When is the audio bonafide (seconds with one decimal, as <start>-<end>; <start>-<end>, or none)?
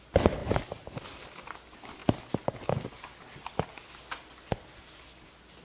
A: 0.0-5.6